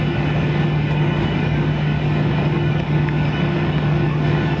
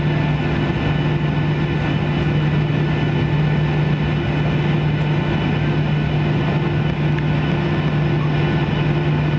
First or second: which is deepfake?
first